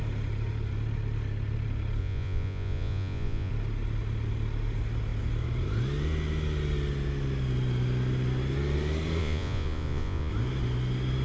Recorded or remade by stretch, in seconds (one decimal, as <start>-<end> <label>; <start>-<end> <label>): 0.0-2.0 recorded; 2.0-3.5 remade; 3.5-9.2 recorded; 9.2-10.3 remade; 10.3-11.2 recorded

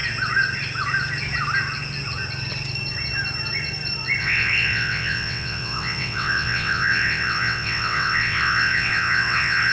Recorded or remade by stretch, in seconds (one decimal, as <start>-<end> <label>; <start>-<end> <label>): 0.0-4.2 recorded; 4.2-9.7 remade

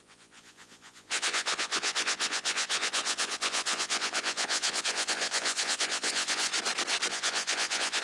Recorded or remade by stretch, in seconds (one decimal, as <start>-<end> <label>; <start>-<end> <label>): 0.0-6.5 remade; 6.5-7.1 recorded; 7.1-8.0 remade